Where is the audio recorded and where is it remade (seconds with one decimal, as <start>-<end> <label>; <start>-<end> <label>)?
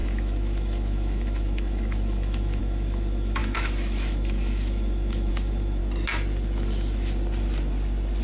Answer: 0.0-5.8 remade; 5.8-8.2 recorded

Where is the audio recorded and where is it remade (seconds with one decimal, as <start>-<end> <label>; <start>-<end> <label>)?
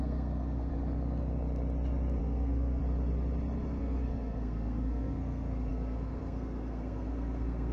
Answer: 0.0-0.7 remade; 0.7-2.2 recorded; 2.2-2.8 remade; 2.8-3.8 recorded; 3.8-7.7 remade